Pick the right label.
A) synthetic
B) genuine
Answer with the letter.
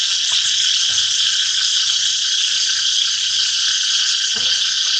B